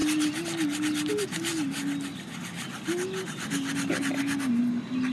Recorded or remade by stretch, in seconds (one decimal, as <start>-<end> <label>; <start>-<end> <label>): 0.0-5.1 recorded